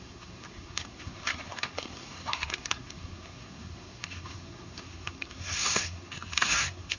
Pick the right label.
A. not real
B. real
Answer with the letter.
A